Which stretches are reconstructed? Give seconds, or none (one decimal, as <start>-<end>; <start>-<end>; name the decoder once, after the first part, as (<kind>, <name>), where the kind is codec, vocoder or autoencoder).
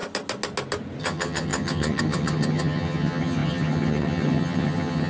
1.0-5.1 (vocoder, HiFi-GAN)